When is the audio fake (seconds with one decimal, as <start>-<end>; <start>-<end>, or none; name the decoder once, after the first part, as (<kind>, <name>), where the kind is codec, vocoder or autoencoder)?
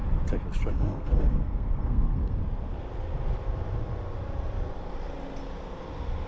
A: 0.7-2.4 (codec, SNAC)